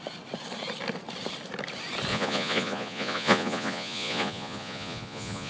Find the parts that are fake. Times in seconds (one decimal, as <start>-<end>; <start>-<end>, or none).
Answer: 2.1-5.5